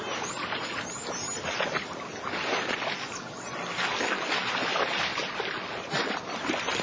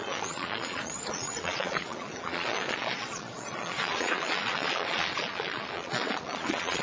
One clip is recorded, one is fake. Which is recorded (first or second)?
first